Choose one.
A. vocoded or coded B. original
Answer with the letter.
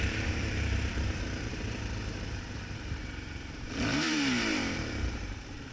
A